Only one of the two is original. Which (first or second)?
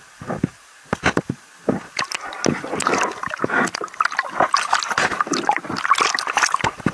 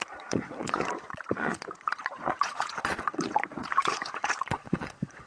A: first